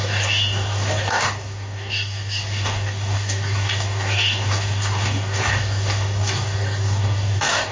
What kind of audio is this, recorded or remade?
remade